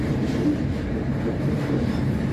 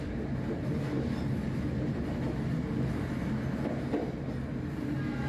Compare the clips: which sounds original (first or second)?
second